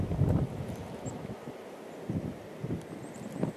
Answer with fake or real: real